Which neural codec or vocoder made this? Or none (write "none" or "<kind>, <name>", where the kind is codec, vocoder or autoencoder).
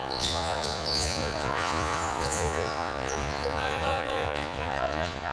vocoder, Vocos